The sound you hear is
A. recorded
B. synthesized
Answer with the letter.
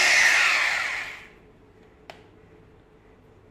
A